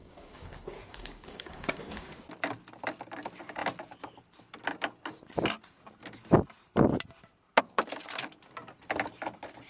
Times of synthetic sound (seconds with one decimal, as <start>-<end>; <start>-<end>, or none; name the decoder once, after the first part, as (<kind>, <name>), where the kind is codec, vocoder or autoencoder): 0.0-2.2 (codec, DAC)